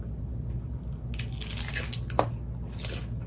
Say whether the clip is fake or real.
real